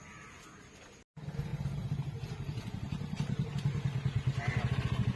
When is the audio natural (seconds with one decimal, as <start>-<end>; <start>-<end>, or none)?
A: 0.0-1.5; 3.5-5.2